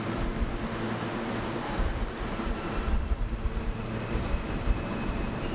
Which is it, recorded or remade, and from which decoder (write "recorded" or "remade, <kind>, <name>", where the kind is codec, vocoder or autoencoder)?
remade, vocoder, BigVGAN v2